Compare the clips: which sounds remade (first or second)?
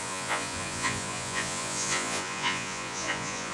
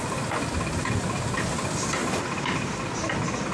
first